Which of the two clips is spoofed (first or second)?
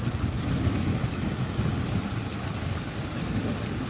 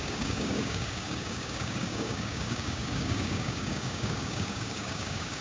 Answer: second